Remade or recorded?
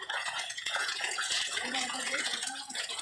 remade